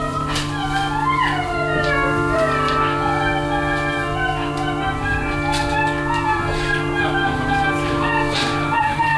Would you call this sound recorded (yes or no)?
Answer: no